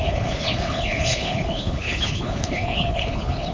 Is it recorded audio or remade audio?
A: remade